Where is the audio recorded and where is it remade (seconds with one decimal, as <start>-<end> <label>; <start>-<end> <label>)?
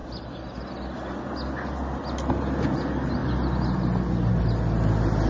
0.0-5.3 recorded